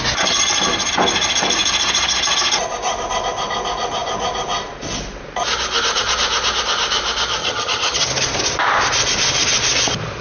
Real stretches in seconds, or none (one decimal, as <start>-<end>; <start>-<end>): 0.0-7.4; 8.1-10.2